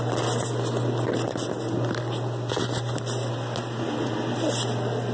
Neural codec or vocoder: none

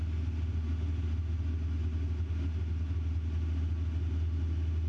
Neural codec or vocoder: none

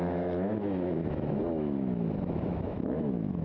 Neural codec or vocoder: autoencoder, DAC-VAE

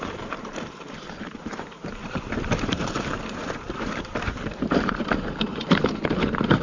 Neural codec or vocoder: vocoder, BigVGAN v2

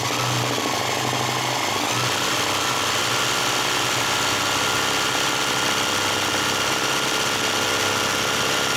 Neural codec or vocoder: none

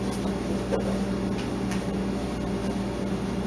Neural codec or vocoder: none